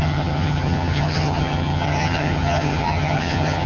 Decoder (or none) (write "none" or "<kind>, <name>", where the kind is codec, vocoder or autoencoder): vocoder, HiFi-GAN